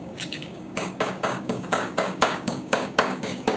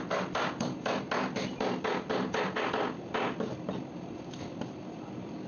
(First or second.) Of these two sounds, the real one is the second